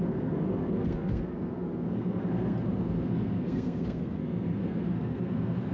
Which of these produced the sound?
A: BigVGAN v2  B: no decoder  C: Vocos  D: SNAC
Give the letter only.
D